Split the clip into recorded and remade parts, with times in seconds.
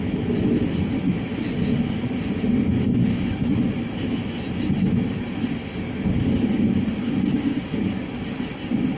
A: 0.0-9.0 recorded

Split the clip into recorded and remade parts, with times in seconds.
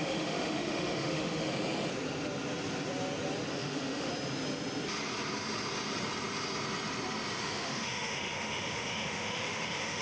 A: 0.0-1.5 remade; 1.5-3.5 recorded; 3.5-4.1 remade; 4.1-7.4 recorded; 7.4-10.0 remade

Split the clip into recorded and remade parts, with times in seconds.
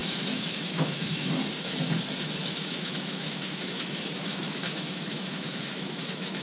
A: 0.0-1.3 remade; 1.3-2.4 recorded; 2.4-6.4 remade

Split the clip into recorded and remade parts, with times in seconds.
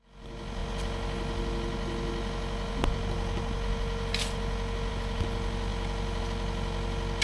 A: 0.0-7.2 recorded